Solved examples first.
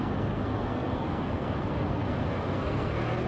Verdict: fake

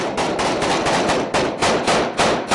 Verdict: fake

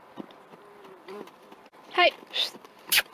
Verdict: fake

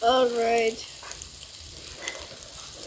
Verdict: real